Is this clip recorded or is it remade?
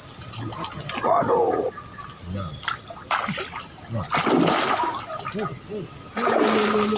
recorded